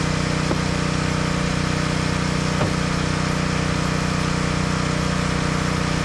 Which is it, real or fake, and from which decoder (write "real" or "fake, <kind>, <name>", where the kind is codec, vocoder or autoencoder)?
real